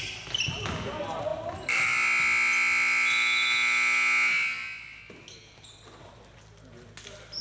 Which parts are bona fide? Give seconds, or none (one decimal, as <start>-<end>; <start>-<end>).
0.0-7.4